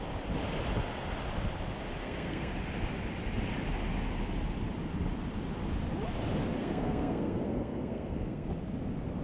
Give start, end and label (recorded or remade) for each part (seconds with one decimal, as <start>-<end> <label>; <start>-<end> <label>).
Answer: 0.0-2.0 recorded; 2.0-2.5 remade; 2.5-6.6 recorded; 6.6-8.5 remade; 8.5-9.2 recorded